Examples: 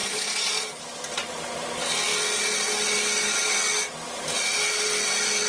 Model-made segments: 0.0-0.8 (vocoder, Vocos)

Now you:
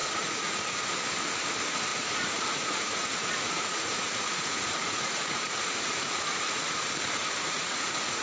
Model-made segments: 0.0-0.8 (vocoder, Vocos); 1.9-6.8; 7.2-8.2

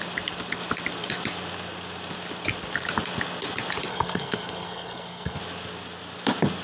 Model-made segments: 3.9-5.4 (codec, SNAC)

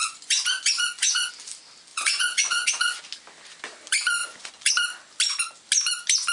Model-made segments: 0.0-1.3 (vocoder, Vocos); 1.9-3.0; 4.2-4.7